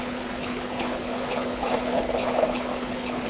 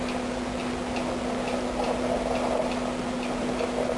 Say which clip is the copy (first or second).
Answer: first